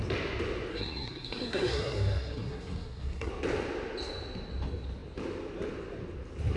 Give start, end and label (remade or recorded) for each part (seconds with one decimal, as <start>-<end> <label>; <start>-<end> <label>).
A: 0.0-0.7 recorded; 0.7-3.3 remade; 3.3-6.6 recorded